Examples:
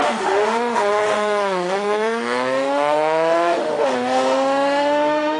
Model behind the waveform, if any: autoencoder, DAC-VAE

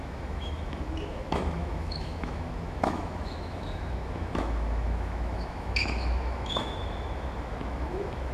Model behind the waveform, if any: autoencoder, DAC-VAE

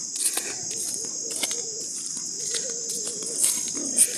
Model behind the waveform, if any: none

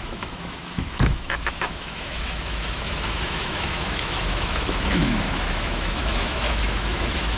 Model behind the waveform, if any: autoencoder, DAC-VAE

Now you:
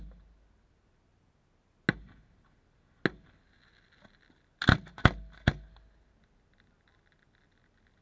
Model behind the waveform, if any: none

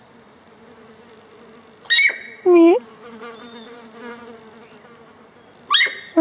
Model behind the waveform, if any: none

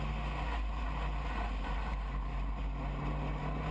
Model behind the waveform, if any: none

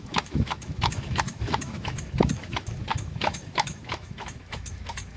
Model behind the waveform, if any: autoencoder, DAC-VAE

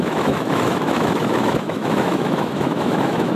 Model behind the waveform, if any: autoencoder, DAC-VAE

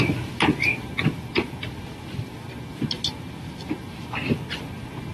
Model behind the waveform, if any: none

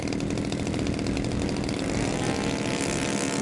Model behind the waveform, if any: none